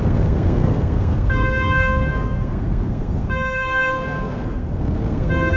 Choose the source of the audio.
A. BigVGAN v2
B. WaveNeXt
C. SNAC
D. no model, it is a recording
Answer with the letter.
C